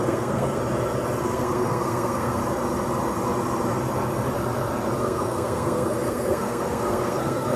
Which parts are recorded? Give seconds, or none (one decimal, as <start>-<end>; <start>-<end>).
0.6-1.2; 2.4-5.0